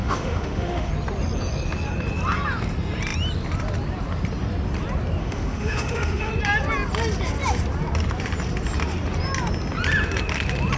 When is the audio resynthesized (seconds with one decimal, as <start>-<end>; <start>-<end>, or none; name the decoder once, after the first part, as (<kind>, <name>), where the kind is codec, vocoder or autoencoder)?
0.0-0.9 (autoencoder, DAC-VAE); 5.2-6.3

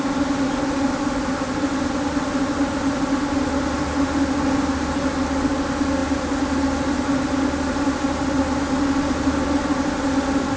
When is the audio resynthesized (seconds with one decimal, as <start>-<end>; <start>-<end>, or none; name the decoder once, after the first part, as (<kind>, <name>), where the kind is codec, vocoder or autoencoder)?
none

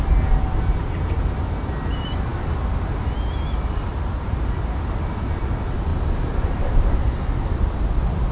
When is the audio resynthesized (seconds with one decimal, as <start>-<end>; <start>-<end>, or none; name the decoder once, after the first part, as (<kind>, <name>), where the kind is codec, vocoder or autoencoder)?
3.9-4.6 (vocoder, BigVGAN v2); 5.9-7.2

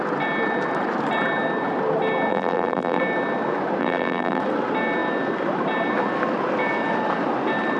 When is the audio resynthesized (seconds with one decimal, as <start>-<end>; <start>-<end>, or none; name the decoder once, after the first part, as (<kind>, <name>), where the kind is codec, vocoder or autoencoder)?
2.3-3.0 (vocoder, BigVGAN v2); 3.8-4.4

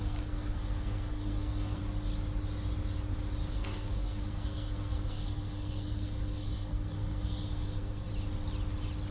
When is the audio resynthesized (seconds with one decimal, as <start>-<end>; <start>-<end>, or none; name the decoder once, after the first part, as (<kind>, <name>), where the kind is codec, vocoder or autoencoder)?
0.0-1.8 (codec, SNAC); 3.5-8.1

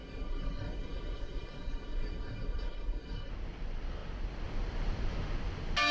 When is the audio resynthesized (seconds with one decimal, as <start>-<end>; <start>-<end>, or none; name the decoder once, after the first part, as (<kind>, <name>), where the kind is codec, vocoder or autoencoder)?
0.0-3.3 (codec, SNAC)

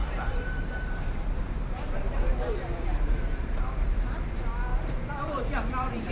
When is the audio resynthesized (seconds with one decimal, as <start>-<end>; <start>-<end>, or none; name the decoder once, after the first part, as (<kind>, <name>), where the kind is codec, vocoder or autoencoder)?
0.0-3.7 (vocoder, BigVGAN v2); 4.7-6.1